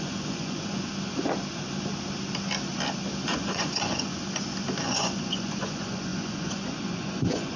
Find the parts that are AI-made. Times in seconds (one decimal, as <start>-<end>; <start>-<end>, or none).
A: 0.0-0.9; 3.3-4.2; 4.8-7.6